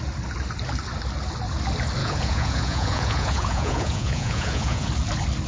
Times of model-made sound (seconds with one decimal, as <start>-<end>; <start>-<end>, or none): 2.0-4.9